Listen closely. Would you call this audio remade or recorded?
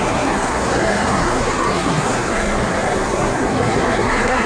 remade